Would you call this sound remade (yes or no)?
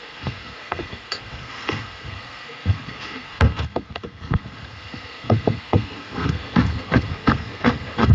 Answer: yes